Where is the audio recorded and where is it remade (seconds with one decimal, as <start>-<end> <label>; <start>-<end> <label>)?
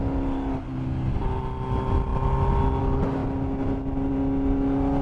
0.0-5.0 recorded